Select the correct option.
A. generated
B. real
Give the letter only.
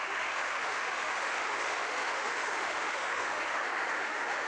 A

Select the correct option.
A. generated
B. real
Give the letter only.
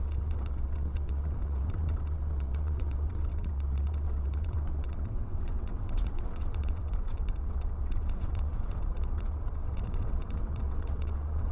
A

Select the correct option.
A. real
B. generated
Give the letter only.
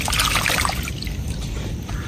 A